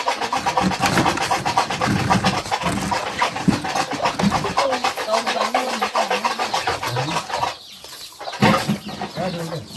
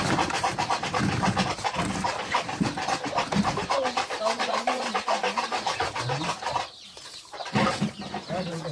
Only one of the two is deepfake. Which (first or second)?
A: second